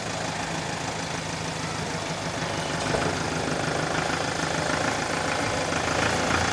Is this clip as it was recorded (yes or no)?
yes